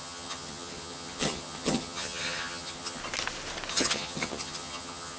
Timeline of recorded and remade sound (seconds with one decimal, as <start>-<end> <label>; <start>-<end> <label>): 0.0-3.0 remade; 3.0-3.7 recorded; 3.7-5.2 remade